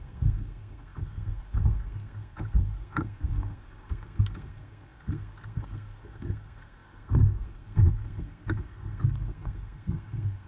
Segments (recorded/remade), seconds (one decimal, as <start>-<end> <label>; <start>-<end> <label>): 0.0-10.5 remade